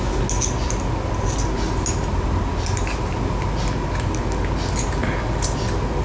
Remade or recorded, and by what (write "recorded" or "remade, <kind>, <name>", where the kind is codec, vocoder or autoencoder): recorded